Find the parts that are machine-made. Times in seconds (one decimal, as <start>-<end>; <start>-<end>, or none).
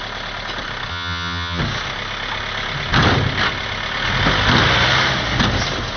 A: 0.9-1.6